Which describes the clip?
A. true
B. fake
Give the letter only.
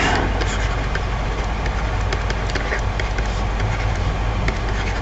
A